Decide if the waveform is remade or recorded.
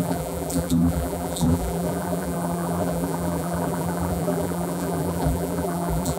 remade